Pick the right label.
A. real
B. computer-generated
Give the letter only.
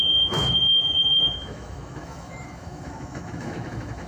B